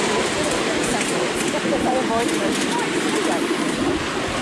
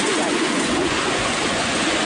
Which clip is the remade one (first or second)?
second